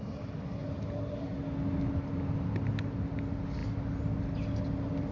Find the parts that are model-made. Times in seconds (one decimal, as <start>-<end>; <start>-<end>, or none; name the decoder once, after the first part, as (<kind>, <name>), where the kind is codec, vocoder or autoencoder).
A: none